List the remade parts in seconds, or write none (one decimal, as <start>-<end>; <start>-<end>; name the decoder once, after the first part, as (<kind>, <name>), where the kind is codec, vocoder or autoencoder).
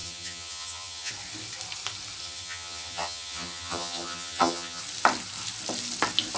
0.0-1.1 (vocoder, HiFi-GAN); 2.2-4.8